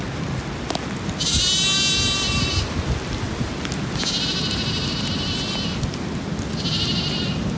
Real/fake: real